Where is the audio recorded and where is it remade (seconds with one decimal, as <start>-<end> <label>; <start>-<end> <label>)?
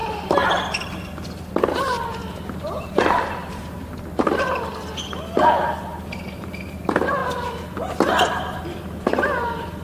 0.0-0.6 remade; 0.6-2.2 recorded; 2.2-3.8 remade; 3.8-5.9 recorded; 5.9-6.6 remade; 6.6-9.8 recorded